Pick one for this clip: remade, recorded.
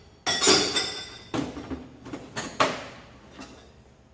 recorded